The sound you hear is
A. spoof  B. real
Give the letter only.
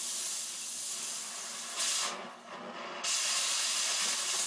B